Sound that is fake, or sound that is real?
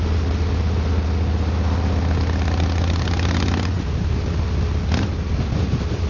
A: real